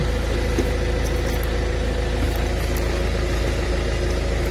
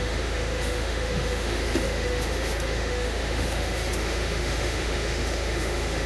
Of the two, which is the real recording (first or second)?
first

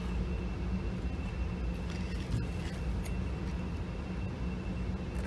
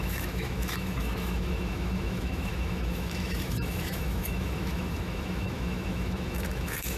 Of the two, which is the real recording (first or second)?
first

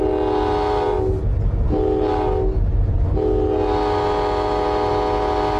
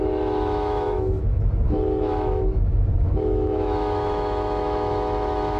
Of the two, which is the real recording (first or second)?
first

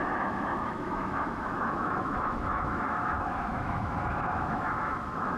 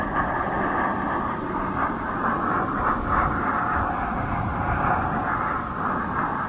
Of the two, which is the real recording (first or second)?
second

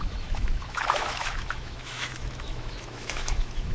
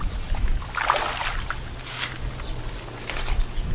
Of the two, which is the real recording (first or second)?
second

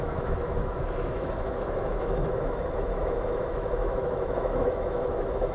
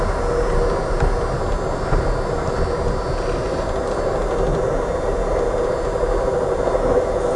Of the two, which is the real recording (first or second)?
second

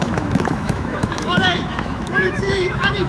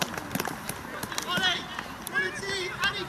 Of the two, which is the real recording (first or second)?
second